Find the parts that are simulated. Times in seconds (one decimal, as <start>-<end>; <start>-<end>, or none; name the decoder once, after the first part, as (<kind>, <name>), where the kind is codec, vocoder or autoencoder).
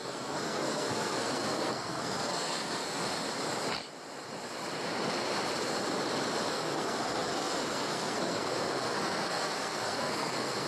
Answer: 0.0-3.0 (codec, SNAC); 6.5-10.7